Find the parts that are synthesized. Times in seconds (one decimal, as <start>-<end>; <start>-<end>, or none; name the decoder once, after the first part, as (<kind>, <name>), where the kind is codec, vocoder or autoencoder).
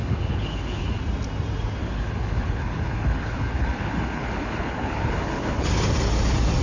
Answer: 0.0-1.0 (codec, HILCodec); 1.8-5.7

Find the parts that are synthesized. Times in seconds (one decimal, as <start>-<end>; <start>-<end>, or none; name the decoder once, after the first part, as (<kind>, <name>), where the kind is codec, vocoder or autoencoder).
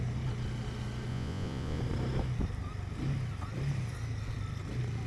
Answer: 1.1-1.8 (vocoder, Vocos)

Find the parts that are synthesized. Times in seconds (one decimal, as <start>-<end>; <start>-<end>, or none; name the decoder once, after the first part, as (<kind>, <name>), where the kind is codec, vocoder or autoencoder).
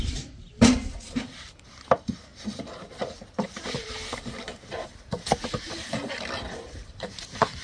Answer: 0.0-2.3 (vocoder, BigVGAN v2); 2.9-4.5; 6.4-7.6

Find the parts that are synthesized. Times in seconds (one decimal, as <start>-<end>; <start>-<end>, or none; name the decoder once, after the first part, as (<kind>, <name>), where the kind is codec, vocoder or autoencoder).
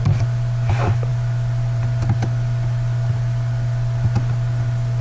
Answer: none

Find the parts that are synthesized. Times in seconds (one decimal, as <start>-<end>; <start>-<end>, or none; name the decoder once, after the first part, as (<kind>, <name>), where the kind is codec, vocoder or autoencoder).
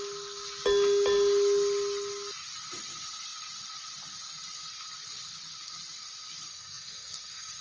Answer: 6.5-7.6 (codec, SNAC)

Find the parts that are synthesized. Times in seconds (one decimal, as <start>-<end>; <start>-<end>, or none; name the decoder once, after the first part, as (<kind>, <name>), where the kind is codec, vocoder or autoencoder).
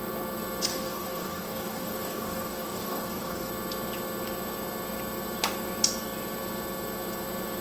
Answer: 0.7-3.5 (codec, DAC)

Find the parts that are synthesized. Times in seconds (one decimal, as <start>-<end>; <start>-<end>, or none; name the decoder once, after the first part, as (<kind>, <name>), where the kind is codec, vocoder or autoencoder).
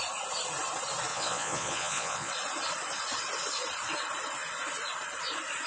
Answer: 1.1-2.3 (vocoder, Vocos)